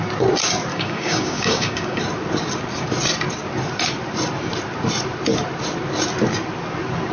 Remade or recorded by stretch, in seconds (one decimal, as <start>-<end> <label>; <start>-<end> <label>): 0.0-0.7 recorded; 0.7-2.0 remade; 2.0-7.1 recorded